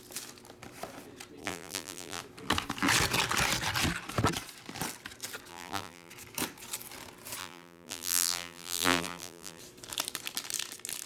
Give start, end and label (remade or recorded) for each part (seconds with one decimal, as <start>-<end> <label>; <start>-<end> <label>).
0.0-1.4 recorded; 1.4-2.2 remade; 2.2-5.5 recorded; 5.5-6.1 remade; 6.1-7.4 recorded; 7.4-9.6 remade; 9.6-11.1 recorded

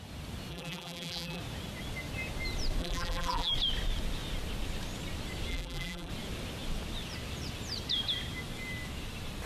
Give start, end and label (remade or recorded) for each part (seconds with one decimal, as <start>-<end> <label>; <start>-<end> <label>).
0.0-0.5 recorded; 0.5-1.4 remade; 1.4-2.8 recorded; 2.8-3.5 remade; 3.5-5.5 recorded; 5.5-6.1 remade; 6.1-9.5 recorded